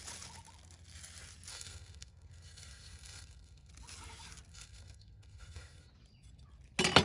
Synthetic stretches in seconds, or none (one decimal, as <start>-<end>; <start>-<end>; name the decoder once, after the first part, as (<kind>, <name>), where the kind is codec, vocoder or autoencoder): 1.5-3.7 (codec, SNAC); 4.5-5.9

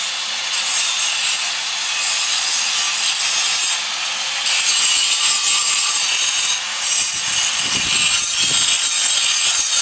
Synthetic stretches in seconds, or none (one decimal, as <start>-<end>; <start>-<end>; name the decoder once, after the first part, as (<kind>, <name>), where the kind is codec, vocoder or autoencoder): 0.0-2.3 (vocoder, Vocos); 4.7-7.3; 9.3-9.8

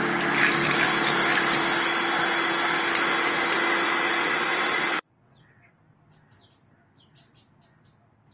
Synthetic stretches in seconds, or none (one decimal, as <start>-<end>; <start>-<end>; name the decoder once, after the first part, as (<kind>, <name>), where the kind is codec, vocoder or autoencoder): 4.2-5.7 (vocoder, WaveNeXt)